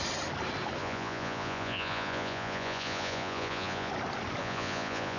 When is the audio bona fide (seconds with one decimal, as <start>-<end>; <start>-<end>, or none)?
0.0-0.8; 3.9-4.4